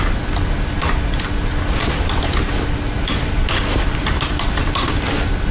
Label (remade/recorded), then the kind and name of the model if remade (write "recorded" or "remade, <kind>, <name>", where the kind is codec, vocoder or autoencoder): recorded